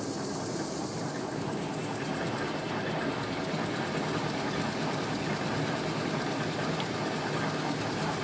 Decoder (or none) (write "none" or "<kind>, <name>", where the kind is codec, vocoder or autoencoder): none